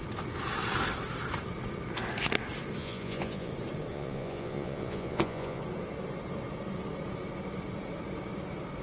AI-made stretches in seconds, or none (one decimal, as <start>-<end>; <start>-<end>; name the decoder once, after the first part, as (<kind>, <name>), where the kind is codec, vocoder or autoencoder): 2.8-3.5 (vocoder, Vocos); 3.9-5.6